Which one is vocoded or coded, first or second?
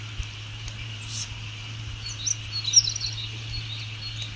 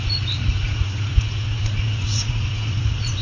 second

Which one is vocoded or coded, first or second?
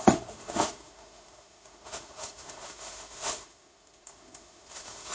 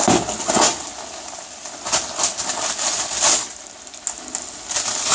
first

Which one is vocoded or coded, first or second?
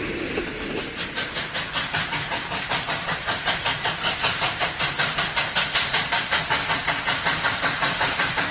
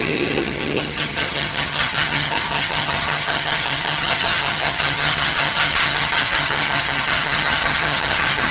second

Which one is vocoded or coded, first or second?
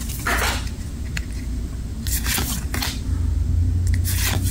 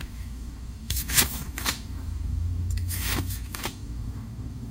second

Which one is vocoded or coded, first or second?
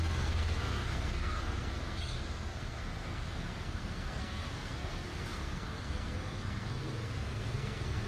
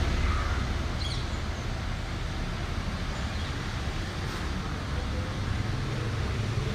first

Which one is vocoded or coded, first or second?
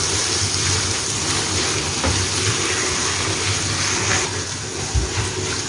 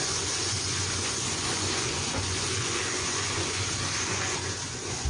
second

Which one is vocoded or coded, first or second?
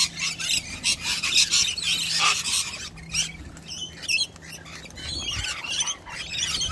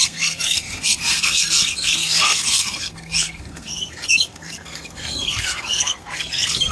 second